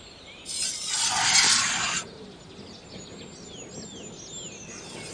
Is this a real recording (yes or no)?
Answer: yes